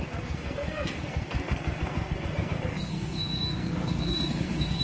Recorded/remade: remade